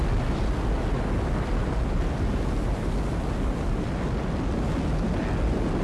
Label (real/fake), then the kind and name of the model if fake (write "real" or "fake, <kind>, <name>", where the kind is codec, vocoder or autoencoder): real